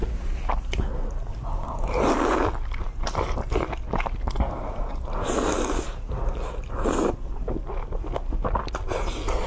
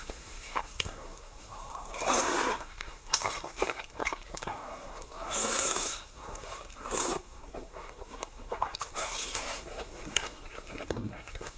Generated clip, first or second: second